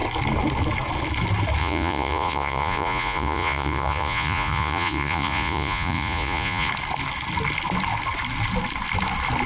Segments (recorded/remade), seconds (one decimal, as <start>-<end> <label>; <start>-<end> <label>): 0.0-1.6 recorded; 1.6-6.7 remade; 6.7-9.5 recorded